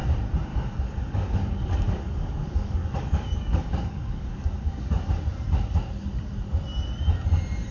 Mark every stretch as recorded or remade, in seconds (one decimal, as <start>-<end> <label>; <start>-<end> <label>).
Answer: 0.0-0.5 recorded; 0.5-5.1 remade; 5.1-7.7 recorded

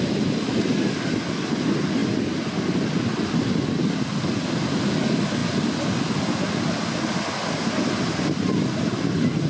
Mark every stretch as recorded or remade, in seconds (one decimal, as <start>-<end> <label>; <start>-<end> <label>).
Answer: 0.0-9.5 recorded